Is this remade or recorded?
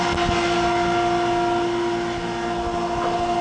recorded